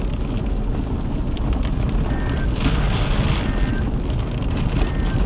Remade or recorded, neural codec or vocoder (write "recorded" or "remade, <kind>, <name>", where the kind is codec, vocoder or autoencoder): recorded